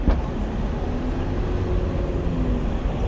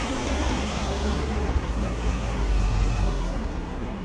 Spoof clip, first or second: second